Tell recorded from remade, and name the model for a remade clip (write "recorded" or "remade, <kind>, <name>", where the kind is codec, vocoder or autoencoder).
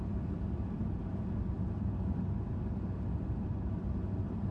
recorded